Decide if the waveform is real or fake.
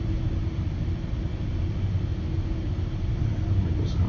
real